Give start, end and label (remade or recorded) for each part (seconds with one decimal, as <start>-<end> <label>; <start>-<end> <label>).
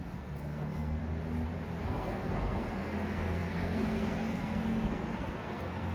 0.0-1.0 remade; 1.0-1.8 recorded; 1.8-5.9 remade